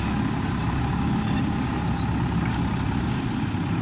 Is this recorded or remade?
recorded